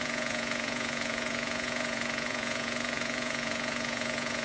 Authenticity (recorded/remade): remade